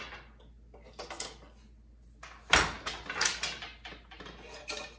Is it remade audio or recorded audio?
recorded